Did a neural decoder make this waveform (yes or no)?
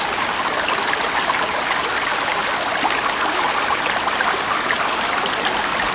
no